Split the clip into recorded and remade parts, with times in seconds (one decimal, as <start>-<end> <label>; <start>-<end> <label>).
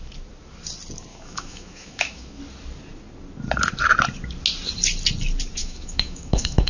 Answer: 0.0-1.1 recorded; 1.1-2.4 remade; 2.4-5.6 recorded; 5.6-6.7 remade